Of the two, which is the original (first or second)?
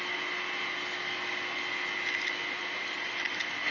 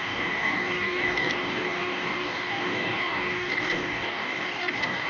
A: first